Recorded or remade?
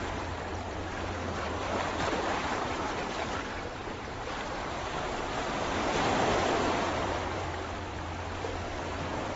remade